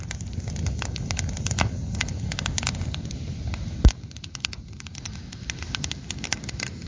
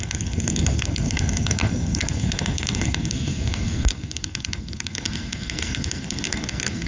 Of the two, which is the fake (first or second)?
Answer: second